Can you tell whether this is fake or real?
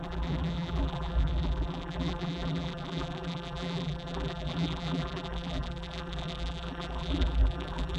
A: fake